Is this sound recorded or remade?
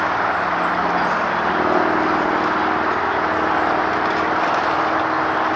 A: recorded